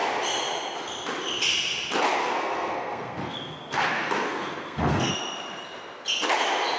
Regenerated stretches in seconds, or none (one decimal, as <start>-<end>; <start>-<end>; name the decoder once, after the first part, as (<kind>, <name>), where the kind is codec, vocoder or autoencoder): 2.2-5.1 (codec, SNAC)